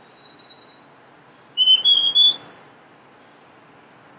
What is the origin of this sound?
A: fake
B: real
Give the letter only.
B